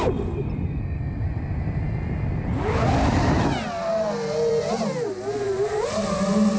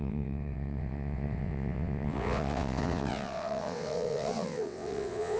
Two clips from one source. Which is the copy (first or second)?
second